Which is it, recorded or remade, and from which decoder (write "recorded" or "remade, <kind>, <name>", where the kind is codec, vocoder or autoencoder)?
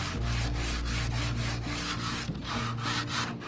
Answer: recorded